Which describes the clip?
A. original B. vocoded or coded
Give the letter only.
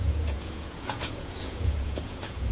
B